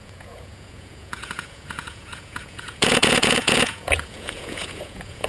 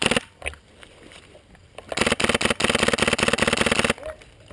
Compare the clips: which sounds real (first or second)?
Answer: second